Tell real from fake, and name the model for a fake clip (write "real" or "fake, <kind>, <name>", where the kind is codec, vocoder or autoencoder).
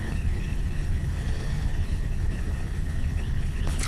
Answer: fake, codec, HILCodec